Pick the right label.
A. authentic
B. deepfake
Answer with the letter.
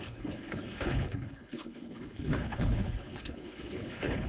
B